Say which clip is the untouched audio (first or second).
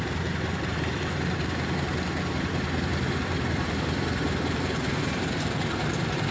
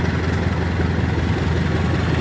second